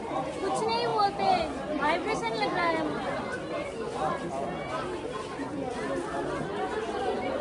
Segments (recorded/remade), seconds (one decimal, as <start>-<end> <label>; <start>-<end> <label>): 0.0-7.4 recorded